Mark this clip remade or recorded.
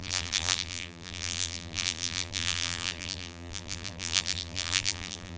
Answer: remade